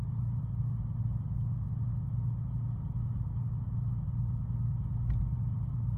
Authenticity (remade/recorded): recorded